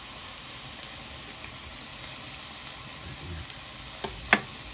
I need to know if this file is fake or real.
real